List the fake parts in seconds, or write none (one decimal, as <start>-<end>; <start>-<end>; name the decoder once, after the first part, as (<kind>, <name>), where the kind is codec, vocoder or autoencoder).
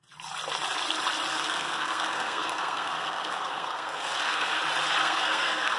1.3-4.6 (codec, SNAC); 5.0-5.8